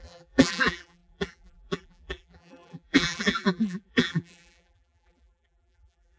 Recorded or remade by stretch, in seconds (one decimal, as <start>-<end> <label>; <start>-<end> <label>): 0.0-6.2 remade